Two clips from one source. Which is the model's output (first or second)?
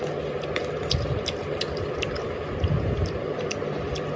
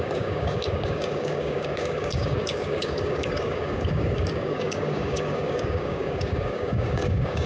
second